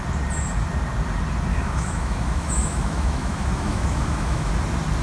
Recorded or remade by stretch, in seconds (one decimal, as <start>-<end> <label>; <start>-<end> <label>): 0.0-1.5 recorded; 1.5-4.5 remade; 4.5-5.0 recorded